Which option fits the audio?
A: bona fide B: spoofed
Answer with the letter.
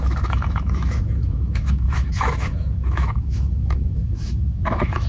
B